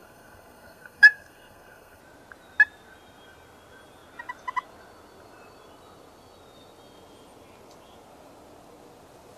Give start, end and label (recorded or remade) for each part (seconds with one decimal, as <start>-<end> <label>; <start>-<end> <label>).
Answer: 0.0-2.0 remade; 2.0-9.4 recorded